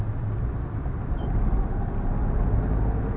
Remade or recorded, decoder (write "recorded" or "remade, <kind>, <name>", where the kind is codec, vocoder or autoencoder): recorded